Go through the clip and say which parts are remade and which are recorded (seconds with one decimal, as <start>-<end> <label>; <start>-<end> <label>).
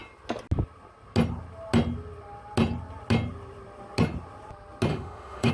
0.0-4.9 recorded; 4.9-5.5 remade